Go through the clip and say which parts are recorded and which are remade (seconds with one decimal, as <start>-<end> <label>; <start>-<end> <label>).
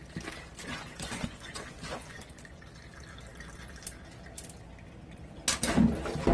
0.0-0.6 recorded; 0.6-2.6 remade; 2.6-6.3 recorded